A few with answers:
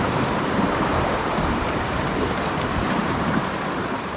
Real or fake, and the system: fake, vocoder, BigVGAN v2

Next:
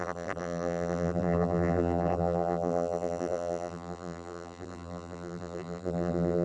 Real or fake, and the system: fake, vocoder, BigVGAN v2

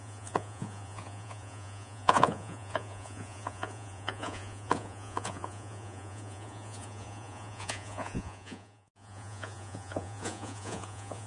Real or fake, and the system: fake, vocoder, Vocos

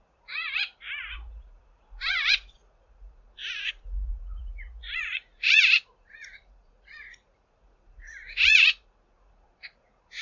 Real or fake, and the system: fake, vocoder, Vocos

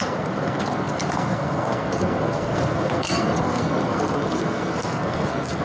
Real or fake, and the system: fake, codec, SNAC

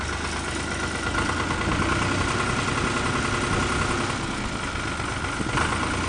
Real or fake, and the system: real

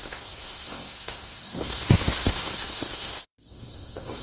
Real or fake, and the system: fake, codec, SNAC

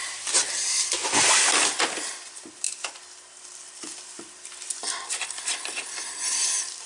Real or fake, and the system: real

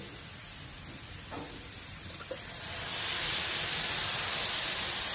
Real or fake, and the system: fake, vocoder, BigVGAN v2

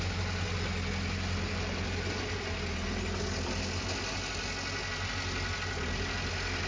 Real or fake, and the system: real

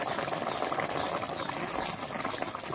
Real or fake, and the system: real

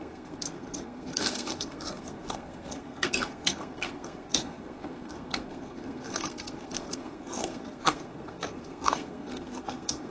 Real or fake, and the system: fake, codec, SNAC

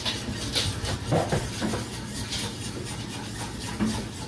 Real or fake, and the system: real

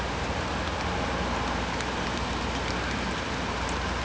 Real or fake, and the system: real